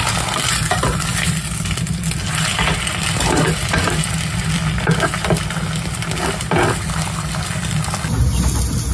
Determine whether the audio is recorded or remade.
recorded